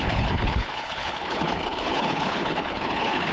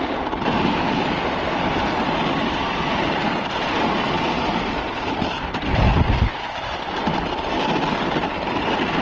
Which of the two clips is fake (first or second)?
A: first